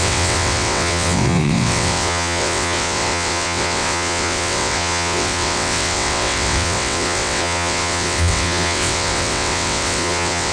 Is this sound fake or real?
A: fake